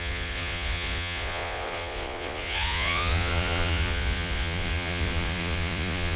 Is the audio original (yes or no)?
no